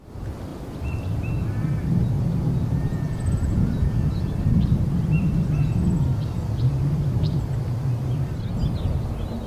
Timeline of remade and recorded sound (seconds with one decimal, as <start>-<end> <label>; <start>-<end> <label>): 0.0-2.9 recorded; 2.9-3.7 remade; 3.7-9.5 recorded